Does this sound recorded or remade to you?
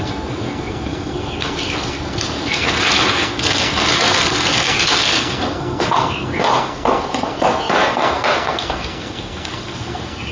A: remade